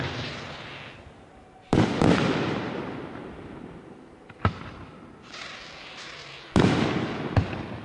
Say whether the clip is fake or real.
real